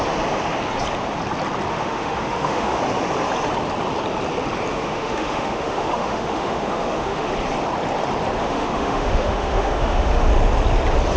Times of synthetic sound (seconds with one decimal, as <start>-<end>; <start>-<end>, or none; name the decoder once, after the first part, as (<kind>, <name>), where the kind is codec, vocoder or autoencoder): 1.7-2.8 (autoencoder, DAC-VAE); 4.7-7.3; 8.4-10.3